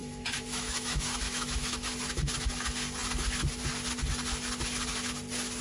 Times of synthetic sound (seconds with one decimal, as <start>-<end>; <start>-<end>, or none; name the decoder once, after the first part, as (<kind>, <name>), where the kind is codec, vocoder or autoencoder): 0.0-1.9 (autoencoder, DAC-VAE)